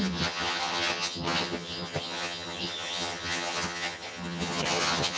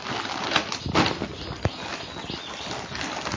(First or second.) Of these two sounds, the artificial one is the first